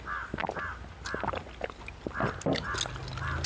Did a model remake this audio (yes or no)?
no